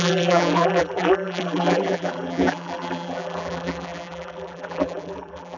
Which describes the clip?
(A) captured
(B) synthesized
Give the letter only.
B